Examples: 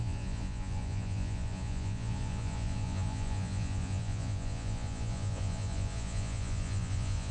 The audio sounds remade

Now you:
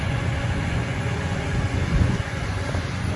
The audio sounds remade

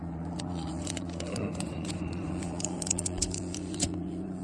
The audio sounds remade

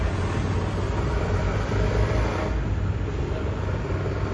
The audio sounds recorded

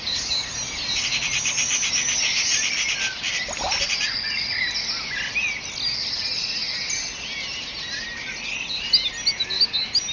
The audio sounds recorded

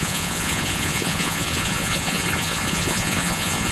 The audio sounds remade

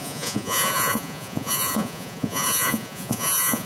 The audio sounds remade